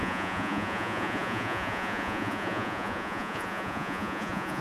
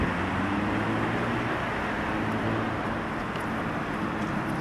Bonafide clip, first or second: second